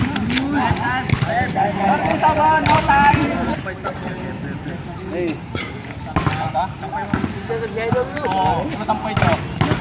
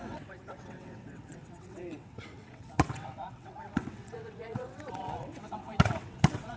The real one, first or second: first